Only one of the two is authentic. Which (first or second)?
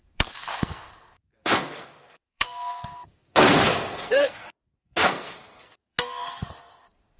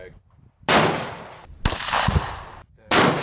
second